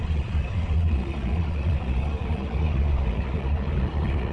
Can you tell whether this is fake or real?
fake